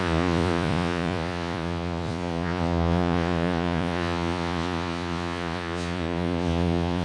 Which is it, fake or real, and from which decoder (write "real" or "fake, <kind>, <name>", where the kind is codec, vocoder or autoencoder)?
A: fake, vocoder, Vocos